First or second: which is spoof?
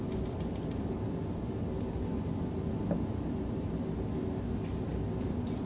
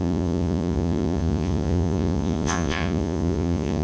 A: second